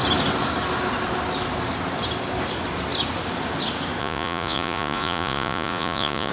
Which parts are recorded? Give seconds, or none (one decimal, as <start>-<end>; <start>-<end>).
0.0-4.0